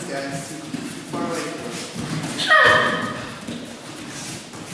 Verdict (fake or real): real